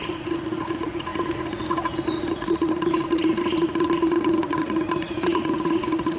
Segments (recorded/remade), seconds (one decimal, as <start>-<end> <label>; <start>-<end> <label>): 0.0-6.2 remade

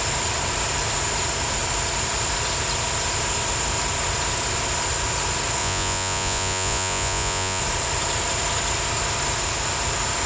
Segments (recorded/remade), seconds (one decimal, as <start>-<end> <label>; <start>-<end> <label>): 0.0-5.6 recorded; 5.6-7.6 remade; 7.6-10.3 recorded

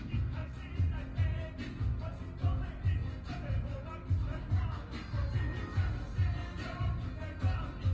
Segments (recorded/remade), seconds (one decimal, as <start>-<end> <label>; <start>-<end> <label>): 0.0-0.4 recorded; 0.4-0.9 remade; 0.9-7.9 recorded

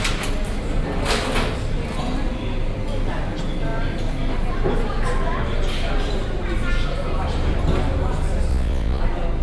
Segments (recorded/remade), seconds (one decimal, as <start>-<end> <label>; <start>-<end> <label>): 0.0-8.5 recorded; 8.5-9.0 remade; 9.0-9.4 recorded

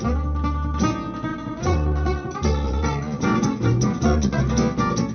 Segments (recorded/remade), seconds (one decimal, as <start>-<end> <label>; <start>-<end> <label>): 0.0-1.3 recorded; 1.3-4.4 remade; 4.4-5.1 recorded

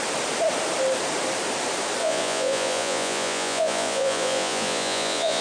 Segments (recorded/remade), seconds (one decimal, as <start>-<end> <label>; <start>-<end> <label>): 0.0-2.0 recorded; 2.0-5.4 remade